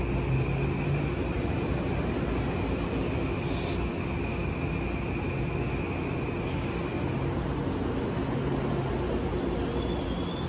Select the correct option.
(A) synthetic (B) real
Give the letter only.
B